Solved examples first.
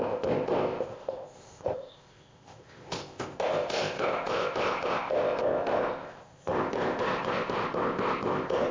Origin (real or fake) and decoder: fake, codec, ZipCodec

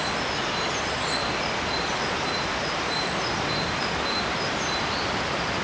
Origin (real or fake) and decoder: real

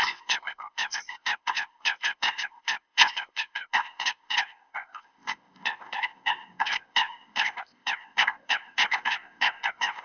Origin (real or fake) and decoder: fake, codec, ZipCodec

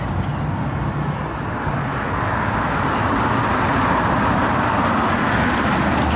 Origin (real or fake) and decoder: real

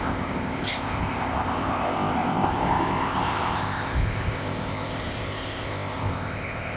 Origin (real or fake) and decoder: fake, codec, ZipCodec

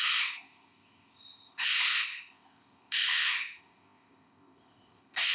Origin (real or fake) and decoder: fake, codec, ZipCodec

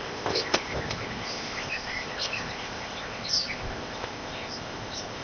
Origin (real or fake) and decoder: fake, codec, ZipCodec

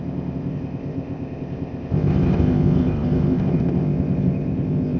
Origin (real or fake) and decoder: fake, codec, ZipCodec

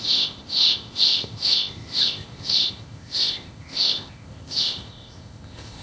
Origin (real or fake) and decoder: fake, codec, ZipCodec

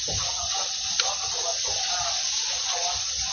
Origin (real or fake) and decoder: real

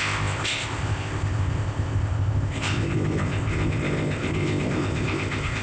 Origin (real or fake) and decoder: fake, codec, ZipCodec